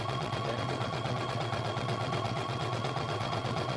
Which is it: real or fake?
fake